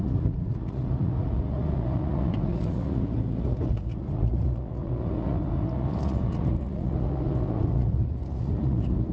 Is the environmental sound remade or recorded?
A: remade